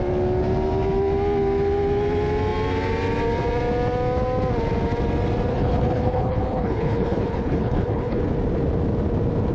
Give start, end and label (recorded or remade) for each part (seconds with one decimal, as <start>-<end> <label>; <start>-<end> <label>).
0.0-5.5 recorded; 5.5-8.2 remade; 8.2-9.5 recorded